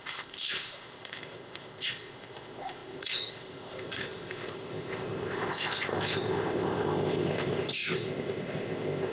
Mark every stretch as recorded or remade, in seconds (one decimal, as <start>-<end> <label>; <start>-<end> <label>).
0.0-9.1 remade